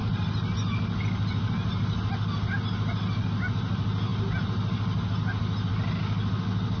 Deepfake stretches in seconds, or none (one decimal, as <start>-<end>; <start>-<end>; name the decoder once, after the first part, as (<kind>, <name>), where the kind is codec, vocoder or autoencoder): none